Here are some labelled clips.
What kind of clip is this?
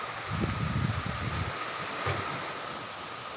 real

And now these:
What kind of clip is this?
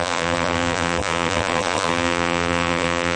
fake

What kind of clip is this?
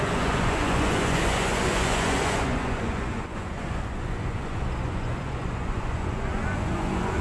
fake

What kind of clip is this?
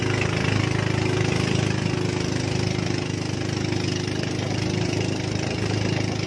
real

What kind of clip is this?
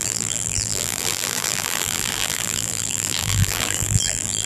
fake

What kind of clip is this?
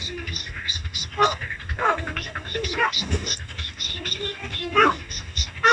fake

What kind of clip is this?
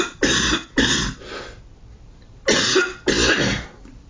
real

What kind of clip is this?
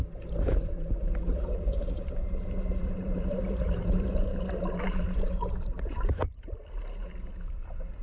fake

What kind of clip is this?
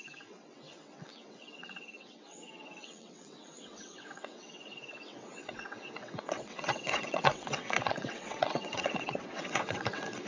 fake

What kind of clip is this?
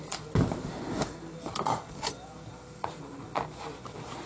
real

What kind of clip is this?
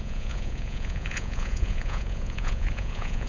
fake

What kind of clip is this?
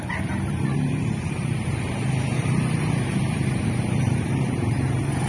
fake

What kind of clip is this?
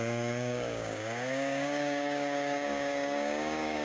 fake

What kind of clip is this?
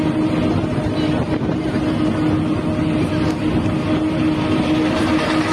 real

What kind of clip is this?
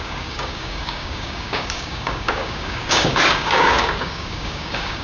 fake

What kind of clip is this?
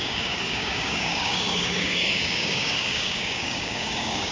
fake